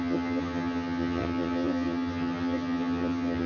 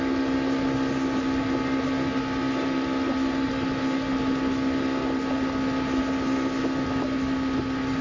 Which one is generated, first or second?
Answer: first